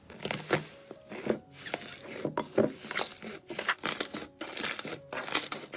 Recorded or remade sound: recorded